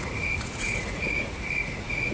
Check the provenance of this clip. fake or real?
fake